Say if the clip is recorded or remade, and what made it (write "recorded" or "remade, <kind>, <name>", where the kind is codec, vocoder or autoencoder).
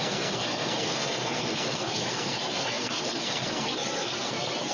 remade, codec, SNAC